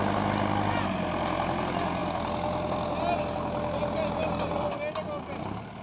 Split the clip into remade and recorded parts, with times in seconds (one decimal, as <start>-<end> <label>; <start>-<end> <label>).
0.0-5.8 recorded